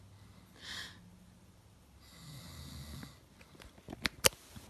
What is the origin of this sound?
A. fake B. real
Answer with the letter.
B